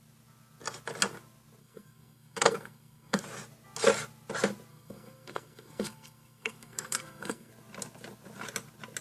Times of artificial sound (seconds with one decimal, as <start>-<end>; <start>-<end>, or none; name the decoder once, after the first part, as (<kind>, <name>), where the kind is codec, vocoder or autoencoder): 1.6-3.2 (codec, SNAC); 4.7-7.5